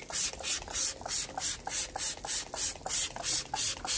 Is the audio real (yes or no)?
yes